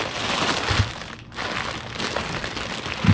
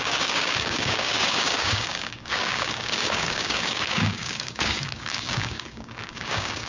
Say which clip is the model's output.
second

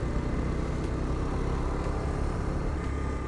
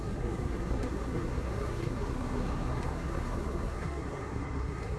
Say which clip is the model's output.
second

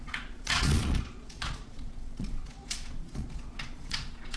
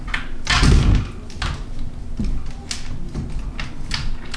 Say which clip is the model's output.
first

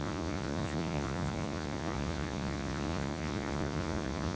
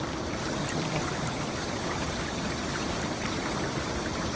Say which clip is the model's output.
first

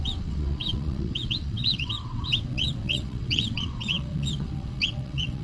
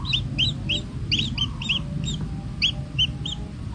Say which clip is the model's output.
first